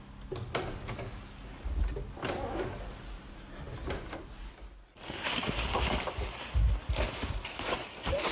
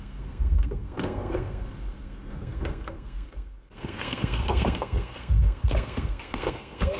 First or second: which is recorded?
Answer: first